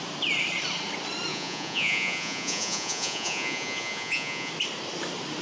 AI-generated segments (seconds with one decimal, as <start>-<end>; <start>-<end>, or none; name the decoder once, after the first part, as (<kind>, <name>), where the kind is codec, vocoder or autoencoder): 1.3-4.5 (vocoder, Vocos)